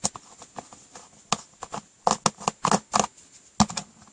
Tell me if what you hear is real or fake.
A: real